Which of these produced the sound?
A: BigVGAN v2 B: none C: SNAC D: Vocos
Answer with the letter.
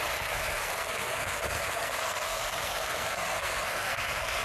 C